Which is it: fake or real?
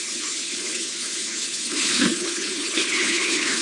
fake